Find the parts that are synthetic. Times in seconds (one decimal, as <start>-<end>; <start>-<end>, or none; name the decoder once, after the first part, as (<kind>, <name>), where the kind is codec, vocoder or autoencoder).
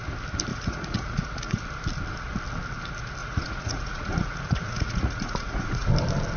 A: 0.5-1.6 (vocoder, Vocos); 3.2-5.9